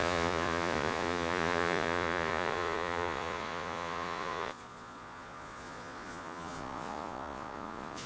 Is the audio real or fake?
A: fake